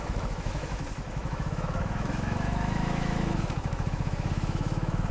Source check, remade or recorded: remade